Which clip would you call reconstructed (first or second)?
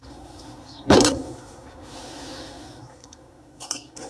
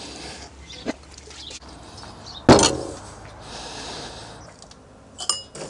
first